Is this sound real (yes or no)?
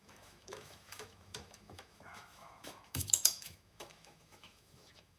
no